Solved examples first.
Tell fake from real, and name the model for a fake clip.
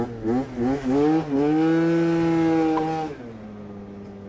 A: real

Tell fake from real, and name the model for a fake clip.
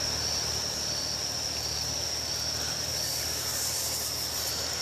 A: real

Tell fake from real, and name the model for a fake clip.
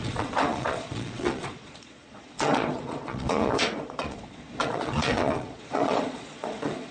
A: fake, vocoder, Vocos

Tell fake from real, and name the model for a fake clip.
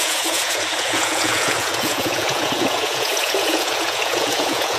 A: fake, vocoder, Vocos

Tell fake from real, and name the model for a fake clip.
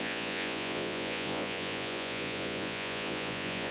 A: fake, vocoder, Vocos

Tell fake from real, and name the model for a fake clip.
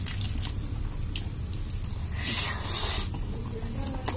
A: real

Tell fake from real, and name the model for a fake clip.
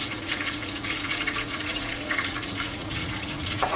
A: fake, vocoder, Vocos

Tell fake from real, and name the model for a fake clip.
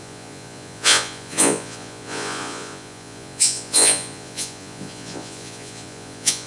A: fake, vocoder, Vocos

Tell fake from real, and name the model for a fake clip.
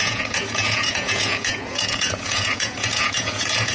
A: fake, vocoder, Vocos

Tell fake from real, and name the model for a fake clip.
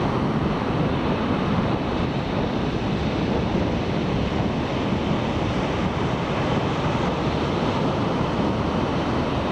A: fake, vocoder, BigVGAN v2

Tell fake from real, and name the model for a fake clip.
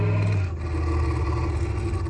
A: real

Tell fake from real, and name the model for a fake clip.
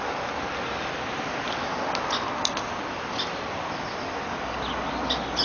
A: real